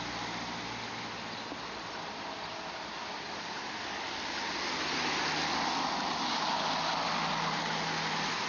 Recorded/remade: recorded